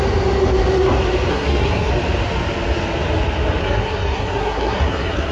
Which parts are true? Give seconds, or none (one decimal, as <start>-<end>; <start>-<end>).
0.0-1.3; 1.9-3.6